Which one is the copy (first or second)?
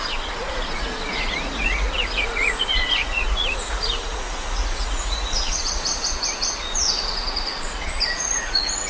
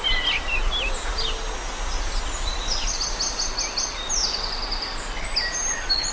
first